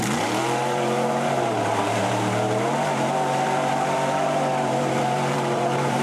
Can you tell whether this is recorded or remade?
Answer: remade